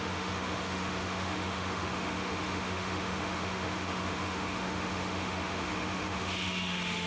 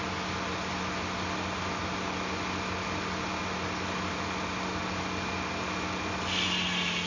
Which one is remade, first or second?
first